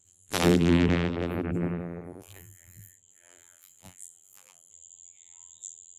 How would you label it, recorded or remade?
remade